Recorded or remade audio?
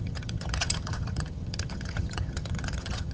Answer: remade